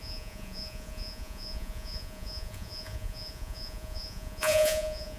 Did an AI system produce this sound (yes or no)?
yes